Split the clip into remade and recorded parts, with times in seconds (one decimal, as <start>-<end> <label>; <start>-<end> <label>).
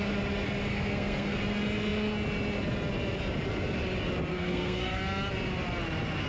0.0-0.7 recorded; 0.7-1.4 remade; 1.4-4.3 recorded; 4.3-5.0 remade; 5.0-6.3 recorded